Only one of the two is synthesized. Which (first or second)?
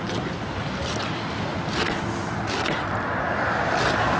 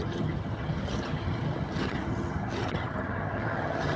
second